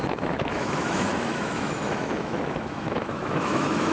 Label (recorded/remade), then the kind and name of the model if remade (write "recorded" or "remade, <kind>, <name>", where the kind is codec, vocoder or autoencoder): remade, autoencoder, DAC-VAE